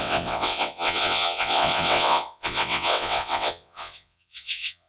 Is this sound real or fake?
fake